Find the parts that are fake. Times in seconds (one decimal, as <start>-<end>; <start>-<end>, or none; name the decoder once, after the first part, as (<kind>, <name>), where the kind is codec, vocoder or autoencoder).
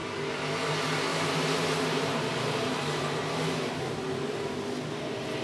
0.0-0.7 (vocoder, BigVGAN v2); 1.1-3.9